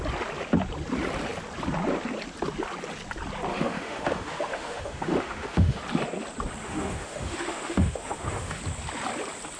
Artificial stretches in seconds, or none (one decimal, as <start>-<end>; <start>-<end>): 3.5-5.8; 6.6-8.6